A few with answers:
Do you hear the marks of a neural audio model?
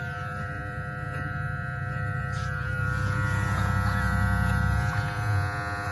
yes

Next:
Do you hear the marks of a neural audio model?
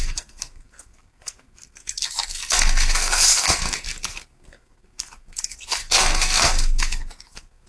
yes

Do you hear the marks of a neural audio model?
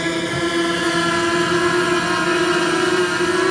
no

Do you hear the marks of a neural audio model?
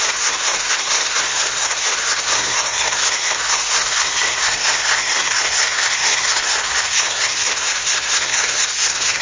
yes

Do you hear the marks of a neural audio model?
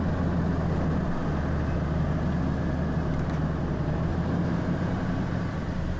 no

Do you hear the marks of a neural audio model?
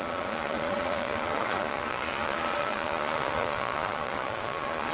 yes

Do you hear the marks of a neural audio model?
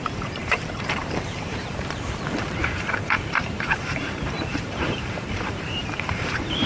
yes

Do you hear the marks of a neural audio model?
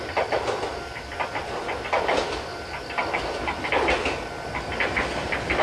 no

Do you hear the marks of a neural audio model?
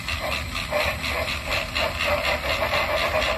no